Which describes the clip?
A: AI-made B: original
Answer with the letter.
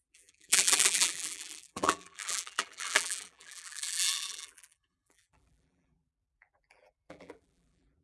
A